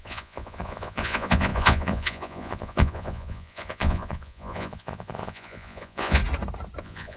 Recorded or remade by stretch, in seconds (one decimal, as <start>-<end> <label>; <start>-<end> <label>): 0.0-6.2 remade; 6.2-6.8 recorded; 6.8-7.2 remade